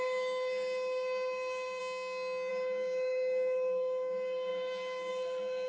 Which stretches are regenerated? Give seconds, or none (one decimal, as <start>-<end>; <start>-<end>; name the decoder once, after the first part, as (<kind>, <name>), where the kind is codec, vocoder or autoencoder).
0.0-1.8 (codec, SNAC); 2.5-5.7